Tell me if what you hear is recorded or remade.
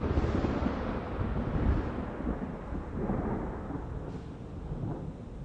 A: recorded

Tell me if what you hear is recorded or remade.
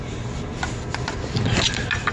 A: recorded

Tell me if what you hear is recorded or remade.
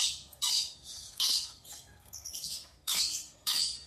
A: remade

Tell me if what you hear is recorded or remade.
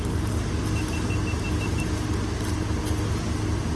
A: recorded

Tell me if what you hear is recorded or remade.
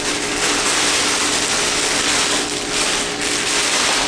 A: recorded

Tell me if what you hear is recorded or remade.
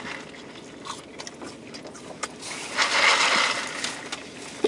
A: recorded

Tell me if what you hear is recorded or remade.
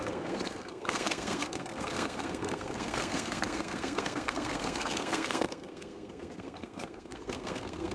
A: remade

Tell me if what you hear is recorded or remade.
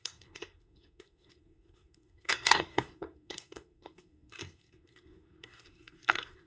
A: remade